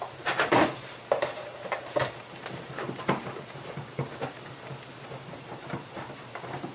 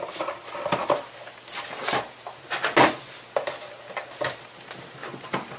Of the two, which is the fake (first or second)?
first